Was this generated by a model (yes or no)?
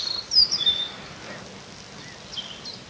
no